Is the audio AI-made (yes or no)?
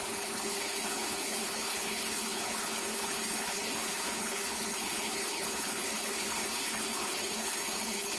yes